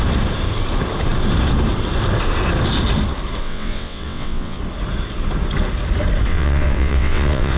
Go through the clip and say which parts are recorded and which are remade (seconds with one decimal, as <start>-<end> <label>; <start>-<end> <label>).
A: 0.0-3.4 recorded; 3.4-4.6 remade; 4.6-6.3 recorded; 6.3-7.6 remade